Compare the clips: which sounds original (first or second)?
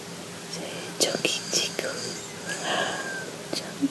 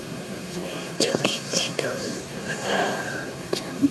first